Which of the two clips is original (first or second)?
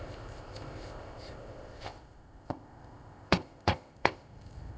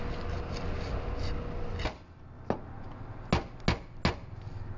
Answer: second